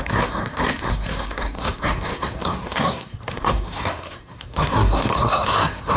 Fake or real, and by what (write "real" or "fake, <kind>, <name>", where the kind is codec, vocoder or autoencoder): fake, codec, SNAC